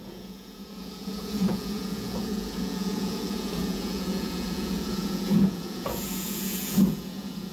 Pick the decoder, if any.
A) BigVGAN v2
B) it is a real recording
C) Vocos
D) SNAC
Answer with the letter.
C